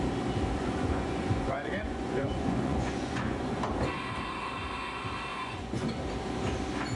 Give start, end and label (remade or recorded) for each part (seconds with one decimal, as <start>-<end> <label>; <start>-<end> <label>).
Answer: 0.0-0.6 recorded; 0.6-3.7 remade; 3.7-5.3 recorded; 5.3-6.0 remade; 6.0-7.0 recorded